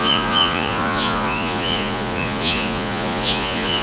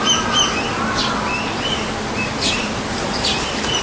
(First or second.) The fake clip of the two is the first